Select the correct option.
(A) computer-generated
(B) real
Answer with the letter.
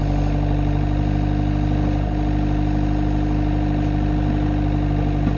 B